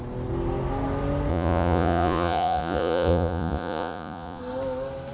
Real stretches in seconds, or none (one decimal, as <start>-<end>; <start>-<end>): 0.0-1.3; 4.4-5.1